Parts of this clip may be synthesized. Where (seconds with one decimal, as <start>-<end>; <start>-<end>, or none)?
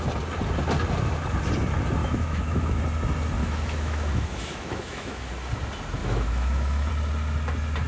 2.0-2.8; 3.4-5.3; 6.0-6.9